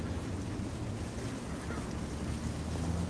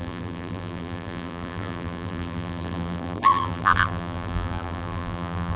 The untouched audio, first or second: first